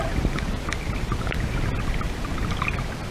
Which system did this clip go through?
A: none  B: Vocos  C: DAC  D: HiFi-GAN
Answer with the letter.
A